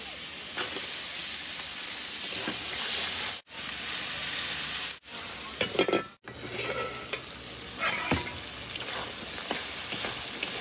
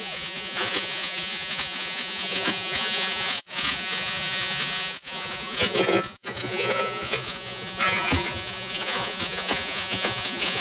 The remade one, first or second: second